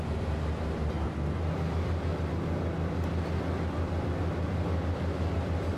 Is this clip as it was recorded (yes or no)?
yes